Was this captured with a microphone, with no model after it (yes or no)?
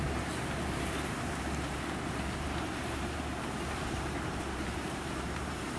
no